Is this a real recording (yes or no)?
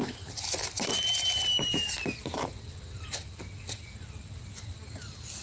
yes